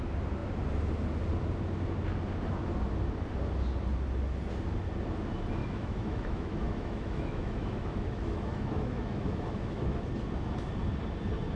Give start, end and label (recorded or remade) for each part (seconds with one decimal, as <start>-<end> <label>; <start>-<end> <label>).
0.0-5.6 recorded; 5.6-10.1 remade; 10.1-11.6 recorded